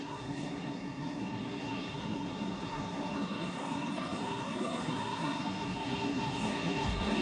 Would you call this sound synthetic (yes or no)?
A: yes